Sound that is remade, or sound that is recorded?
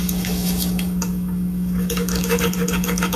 remade